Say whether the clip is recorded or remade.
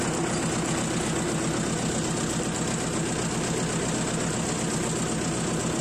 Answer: recorded